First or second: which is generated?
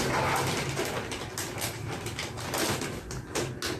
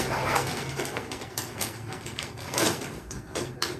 second